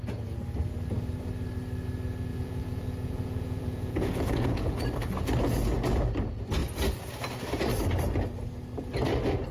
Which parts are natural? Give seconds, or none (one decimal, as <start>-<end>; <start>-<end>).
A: 0.0-2.3; 4.8-9.5